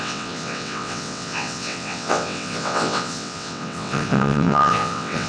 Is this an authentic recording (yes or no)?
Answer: no